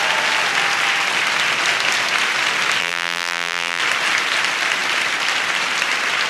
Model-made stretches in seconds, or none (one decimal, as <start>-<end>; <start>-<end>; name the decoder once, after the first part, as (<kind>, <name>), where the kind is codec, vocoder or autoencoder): 2.8-3.8 (vocoder, BigVGAN v2)